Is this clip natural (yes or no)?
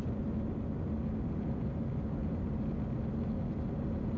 yes